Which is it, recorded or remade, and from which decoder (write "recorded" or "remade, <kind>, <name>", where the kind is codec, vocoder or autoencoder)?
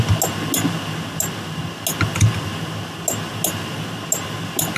recorded